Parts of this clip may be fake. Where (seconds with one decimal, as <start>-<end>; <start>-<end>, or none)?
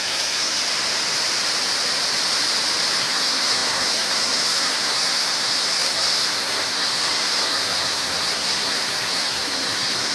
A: 0.0-0.6; 3.0-10.1